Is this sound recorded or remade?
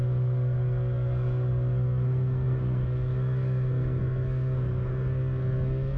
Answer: remade